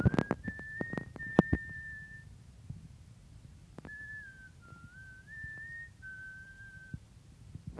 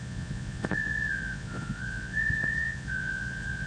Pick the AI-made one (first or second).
second